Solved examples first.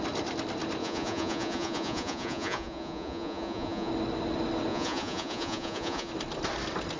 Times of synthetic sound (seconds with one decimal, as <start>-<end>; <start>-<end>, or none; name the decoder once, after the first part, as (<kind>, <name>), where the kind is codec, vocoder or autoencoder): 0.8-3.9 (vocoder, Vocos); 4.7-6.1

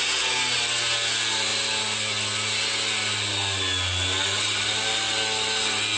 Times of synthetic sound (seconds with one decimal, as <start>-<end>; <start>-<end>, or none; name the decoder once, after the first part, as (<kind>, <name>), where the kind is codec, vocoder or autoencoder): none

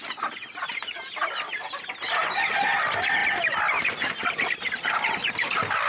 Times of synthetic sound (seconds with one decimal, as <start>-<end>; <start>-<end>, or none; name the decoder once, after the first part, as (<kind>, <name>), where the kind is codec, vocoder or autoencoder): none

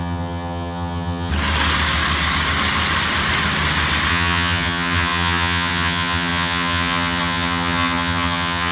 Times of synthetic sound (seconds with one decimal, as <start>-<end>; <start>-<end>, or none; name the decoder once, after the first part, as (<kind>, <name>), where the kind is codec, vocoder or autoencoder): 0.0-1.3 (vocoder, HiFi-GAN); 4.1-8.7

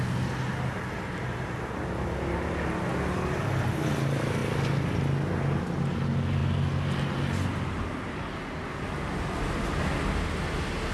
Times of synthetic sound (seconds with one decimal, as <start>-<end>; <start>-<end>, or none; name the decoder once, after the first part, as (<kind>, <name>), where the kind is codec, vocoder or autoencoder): none

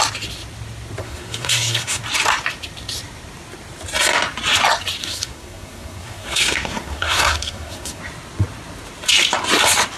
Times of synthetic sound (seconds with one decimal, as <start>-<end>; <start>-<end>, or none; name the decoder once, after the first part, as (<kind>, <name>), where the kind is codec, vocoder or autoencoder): 1.0-2.0 (codec, SNAC); 5.0-8.0

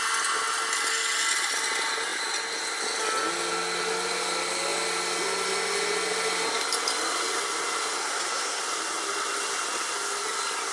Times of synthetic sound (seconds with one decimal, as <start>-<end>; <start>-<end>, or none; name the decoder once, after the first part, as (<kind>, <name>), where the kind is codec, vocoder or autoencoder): 8.0-8.6 (codec, SNAC)

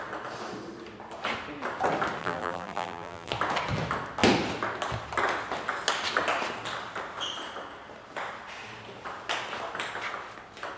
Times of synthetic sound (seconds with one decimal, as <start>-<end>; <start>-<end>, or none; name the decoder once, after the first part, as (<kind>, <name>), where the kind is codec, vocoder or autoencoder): 2.2-3.3 (vocoder, BigVGAN v2)